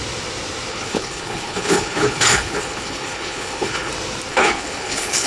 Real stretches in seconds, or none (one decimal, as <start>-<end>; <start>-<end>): 0.0-0.7; 3.9-4.3